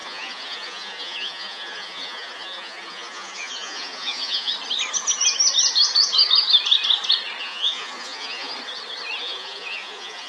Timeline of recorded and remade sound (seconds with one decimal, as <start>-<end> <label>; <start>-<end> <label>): 0.0-4.5 remade; 4.5-7.4 recorded; 7.4-8.5 remade; 8.5-9.2 recorded; 9.2-10.3 remade